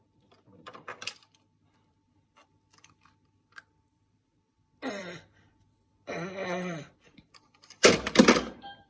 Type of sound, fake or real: fake